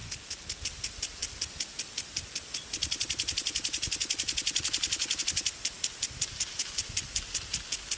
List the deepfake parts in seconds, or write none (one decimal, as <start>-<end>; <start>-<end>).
none